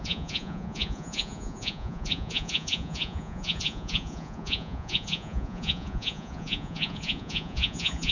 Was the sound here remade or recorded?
remade